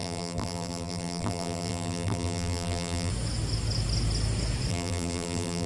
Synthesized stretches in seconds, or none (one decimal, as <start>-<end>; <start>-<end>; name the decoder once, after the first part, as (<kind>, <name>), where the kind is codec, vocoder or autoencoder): 0.0-3.1 (vocoder, BigVGAN v2); 4.7-5.7